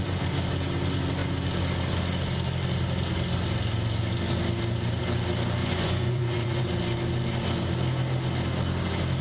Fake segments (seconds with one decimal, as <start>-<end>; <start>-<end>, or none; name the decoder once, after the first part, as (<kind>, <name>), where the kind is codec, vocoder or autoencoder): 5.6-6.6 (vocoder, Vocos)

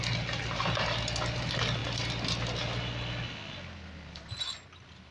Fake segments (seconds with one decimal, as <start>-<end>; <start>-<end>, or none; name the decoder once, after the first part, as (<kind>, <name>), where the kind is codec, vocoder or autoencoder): none

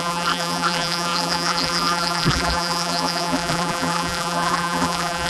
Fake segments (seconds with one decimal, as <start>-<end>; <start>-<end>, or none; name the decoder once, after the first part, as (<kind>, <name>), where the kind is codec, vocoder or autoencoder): 0.0-5.3 (vocoder, BigVGAN v2)

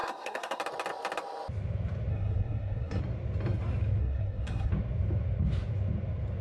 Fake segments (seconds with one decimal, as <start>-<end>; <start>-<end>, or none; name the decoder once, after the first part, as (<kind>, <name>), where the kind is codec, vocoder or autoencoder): 0.0-0.6 (codec, SNAC); 2.1-3.0; 4.0-4.7

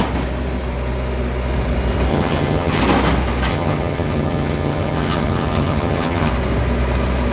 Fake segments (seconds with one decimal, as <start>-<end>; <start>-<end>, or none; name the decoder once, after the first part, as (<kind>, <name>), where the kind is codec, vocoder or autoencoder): 2.1-2.8 (vocoder, HiFi-GAN); 3.5-6.3

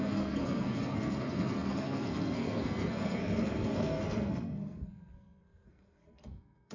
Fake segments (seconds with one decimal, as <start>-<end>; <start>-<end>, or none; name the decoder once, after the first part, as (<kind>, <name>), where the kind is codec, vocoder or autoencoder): 0.0-6.7 (codec, SNAC)